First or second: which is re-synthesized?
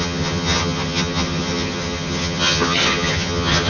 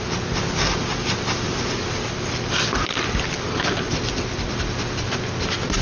first